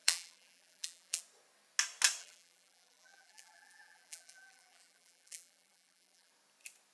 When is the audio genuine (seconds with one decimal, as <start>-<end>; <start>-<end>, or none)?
1.2-2.2; 6.3-6.9